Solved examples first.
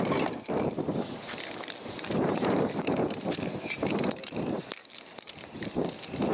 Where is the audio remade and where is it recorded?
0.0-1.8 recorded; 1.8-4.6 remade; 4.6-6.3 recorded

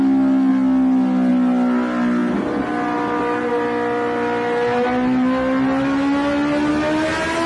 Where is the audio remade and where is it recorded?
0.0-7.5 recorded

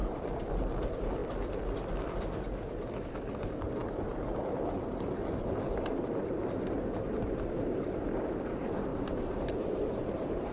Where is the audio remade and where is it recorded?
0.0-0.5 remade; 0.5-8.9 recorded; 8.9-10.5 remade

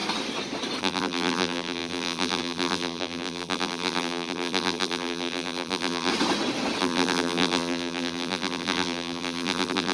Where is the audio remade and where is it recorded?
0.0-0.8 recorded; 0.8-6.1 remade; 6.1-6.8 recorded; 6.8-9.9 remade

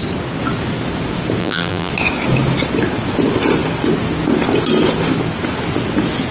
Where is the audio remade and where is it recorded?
0.0-1.4 recorded; 1.4-1.9 remade; 1.9-6.3 recorded

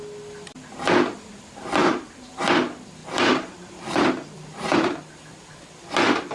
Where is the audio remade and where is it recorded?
0.0-1.8 recorded; 1.8-2.3 remade; 2.3-3.0 recorded; 3.0-4.5 remade; 4.5-6.3 recorded

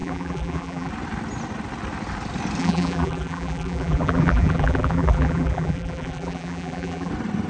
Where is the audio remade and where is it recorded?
0.0-0.9 remade; 0.9-2.6 recorded; 2.6-7.1 remade; 7.1-7.5 recorded